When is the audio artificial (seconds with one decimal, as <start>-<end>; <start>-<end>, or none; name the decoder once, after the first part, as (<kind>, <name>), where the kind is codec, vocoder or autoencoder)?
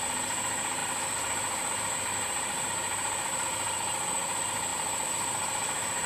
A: 0.0-6.1 (vocoder, BigVGAN v2)